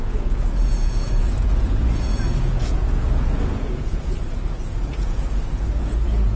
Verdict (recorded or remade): remade